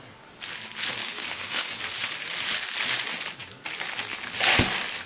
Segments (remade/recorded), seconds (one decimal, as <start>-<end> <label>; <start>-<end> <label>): 0.0-1.0 recorded; 1.0-1.8 remade; 1.8-5.1 recorded